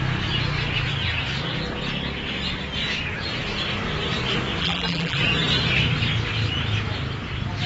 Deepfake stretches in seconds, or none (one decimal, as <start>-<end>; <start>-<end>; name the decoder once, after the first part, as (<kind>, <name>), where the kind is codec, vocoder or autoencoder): 4.6-5.2 (vocoder, BigVGAN v2)